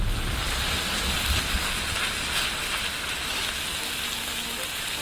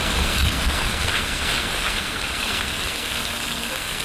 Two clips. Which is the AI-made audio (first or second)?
second